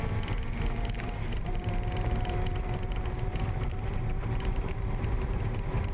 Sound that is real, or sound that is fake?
fake